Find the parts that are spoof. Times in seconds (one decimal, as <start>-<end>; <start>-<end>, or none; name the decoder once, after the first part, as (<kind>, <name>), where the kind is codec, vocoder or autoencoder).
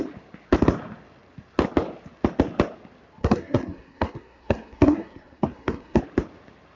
3.2-6.0 (codec, SNAC)